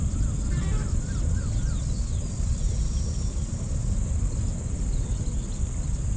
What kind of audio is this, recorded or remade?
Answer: recorded